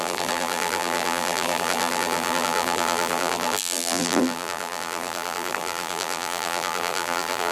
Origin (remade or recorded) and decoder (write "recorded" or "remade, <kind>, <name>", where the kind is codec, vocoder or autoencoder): remade, vocoder, BigVGAN v2